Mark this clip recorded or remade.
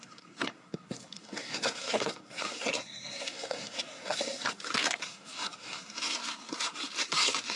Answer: remade